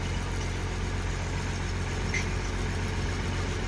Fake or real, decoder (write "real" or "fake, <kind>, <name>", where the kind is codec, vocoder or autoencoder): real